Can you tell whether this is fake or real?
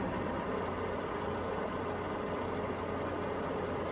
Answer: real